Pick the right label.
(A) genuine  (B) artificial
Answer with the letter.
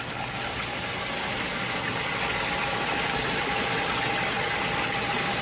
A